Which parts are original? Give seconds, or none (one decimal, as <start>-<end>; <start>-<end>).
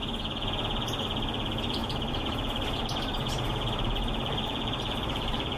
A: 0.0-1.8